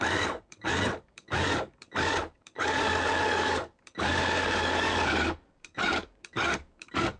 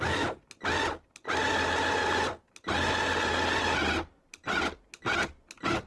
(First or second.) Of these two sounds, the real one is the second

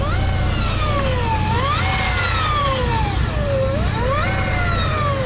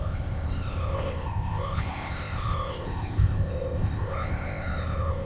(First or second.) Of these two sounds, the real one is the first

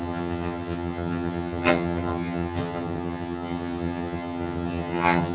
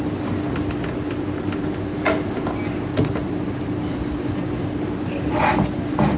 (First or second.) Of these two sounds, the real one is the second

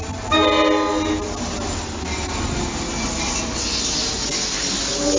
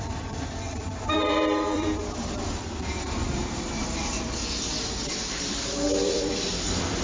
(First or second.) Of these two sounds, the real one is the first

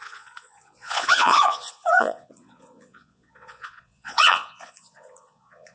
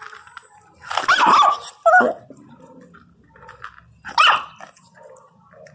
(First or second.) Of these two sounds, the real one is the second